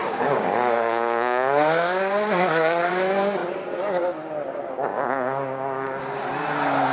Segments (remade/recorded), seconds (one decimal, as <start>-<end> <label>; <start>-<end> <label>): 0.0-2.9 remade; 2.9-4.9 recorded; 4.9-6.0 remade; 6.0-6.9 recorded